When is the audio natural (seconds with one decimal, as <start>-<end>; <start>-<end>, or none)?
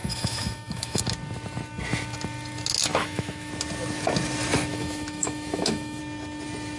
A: 1.0-2.9; 3.5-4.7; 6.0-6.8